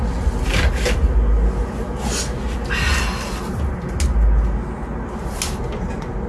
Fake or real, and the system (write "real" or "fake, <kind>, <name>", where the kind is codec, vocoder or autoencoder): real